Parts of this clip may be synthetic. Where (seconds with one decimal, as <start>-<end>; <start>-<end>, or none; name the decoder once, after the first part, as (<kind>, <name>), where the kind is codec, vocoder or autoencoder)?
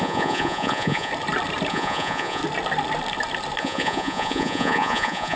0.0-1.1 (vocoder, Vocos); 1.7-2.4; 3.6-5.4